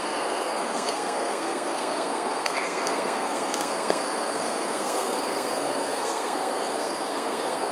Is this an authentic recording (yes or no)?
no